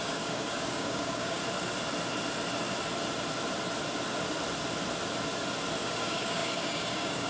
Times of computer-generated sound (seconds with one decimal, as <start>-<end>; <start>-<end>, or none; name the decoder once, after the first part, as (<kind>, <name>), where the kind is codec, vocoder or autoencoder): 0.0-1.4 (codec, DAC); 5.8-7.3